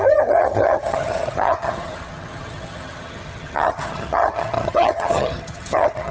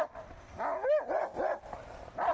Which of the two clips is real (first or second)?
second